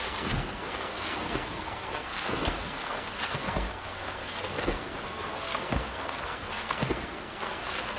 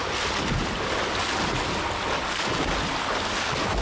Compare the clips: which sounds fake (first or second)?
first